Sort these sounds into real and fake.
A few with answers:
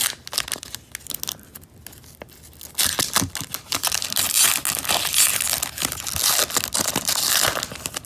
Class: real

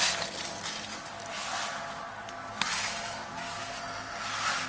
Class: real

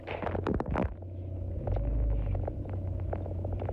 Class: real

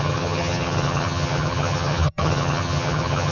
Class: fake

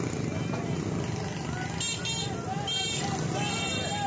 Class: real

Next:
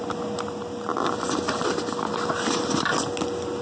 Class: real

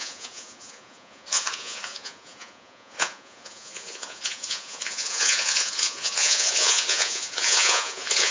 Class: fake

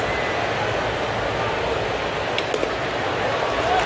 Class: real